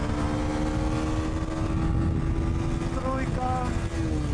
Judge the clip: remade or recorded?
recorded